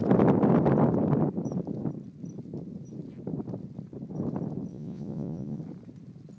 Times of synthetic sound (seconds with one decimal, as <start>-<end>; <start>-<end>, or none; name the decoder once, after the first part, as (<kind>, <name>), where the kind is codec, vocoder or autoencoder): 4.7-5.6 (vocoder, Vocos)